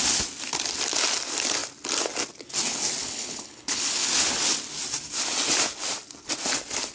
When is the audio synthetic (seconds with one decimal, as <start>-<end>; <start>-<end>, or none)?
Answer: 3.0-4.1